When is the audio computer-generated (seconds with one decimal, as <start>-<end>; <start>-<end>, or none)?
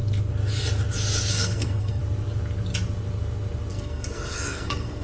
1.3-2.0; 3.7-5.0